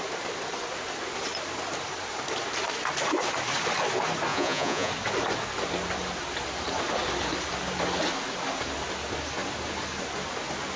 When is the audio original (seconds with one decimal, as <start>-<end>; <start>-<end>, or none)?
0.0-4.3; 4.9-10.8